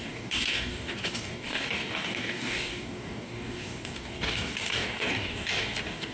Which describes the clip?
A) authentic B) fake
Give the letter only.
B